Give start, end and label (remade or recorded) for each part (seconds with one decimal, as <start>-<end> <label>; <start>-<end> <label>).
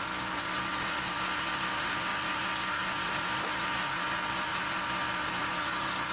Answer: 0.0-6.1 recorded